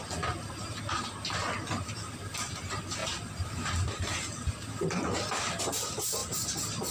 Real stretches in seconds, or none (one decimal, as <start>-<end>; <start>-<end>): 0.0-6.9